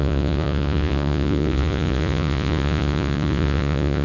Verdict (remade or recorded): remade